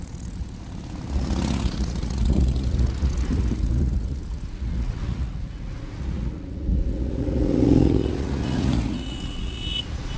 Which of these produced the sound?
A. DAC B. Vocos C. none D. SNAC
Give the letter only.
B